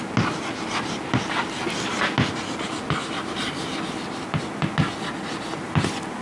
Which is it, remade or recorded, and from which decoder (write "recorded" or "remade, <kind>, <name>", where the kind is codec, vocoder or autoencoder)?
recorded